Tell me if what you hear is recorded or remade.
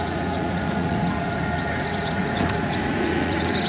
remade